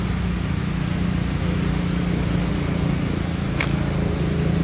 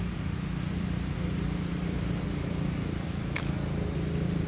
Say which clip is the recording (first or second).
first